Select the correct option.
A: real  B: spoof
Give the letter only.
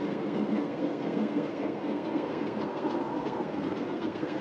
B